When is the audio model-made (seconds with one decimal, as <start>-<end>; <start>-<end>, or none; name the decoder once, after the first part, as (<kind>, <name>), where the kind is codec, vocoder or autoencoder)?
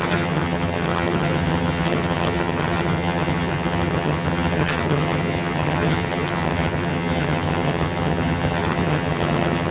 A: 0.0-9.7 (vocoder, HiFi-GAN)